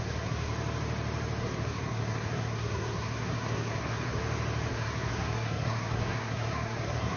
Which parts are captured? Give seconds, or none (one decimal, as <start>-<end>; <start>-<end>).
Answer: 0.5-1.4; 4.2-4.7